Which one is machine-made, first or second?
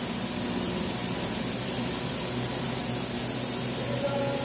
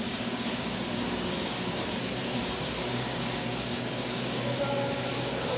second